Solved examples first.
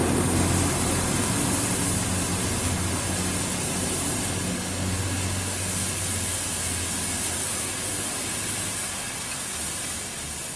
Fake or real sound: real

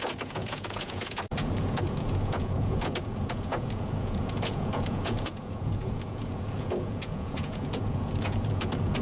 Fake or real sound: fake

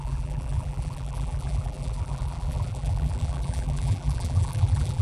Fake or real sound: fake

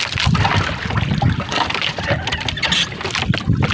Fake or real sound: real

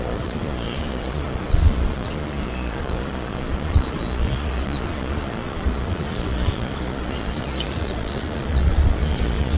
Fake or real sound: fake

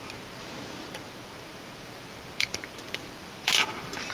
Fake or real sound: fake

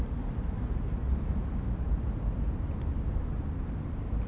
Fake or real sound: real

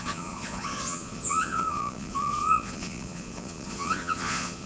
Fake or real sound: fake